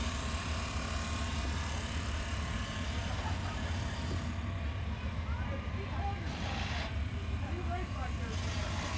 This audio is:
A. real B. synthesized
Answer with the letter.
A